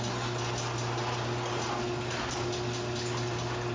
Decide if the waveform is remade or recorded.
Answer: recorded